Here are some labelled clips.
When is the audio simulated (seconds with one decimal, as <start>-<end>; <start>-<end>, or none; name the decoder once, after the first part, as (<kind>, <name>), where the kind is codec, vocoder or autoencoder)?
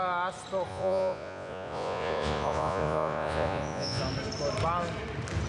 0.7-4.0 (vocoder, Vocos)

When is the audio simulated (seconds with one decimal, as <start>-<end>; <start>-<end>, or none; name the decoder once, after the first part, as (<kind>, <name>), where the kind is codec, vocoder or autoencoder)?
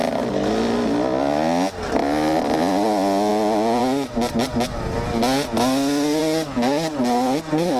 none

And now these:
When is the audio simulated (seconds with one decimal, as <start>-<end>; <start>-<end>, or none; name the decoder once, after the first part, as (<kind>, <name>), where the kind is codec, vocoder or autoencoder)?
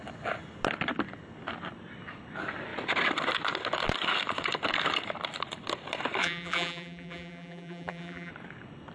6.2-8.3 (vocoder, BigVGAN v2)